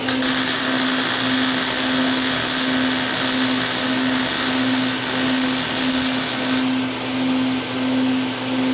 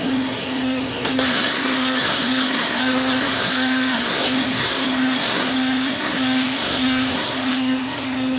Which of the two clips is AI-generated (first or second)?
second